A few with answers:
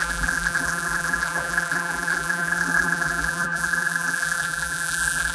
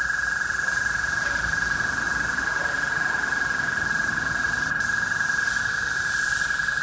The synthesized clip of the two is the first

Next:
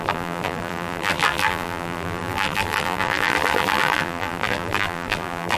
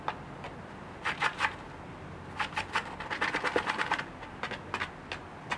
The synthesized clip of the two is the first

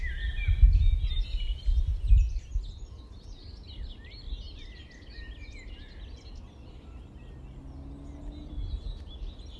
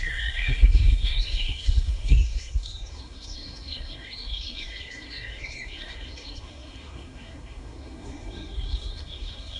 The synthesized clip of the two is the second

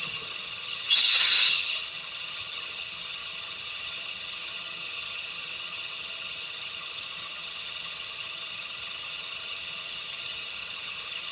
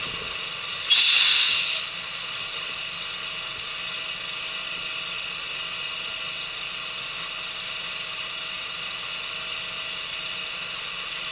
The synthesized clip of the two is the first